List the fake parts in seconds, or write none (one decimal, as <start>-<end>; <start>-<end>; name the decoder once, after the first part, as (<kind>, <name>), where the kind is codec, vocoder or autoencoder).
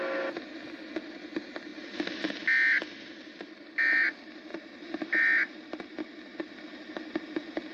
none